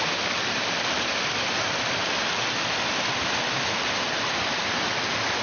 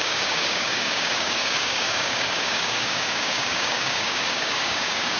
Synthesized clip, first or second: second